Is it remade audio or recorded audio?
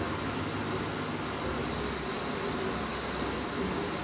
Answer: recorded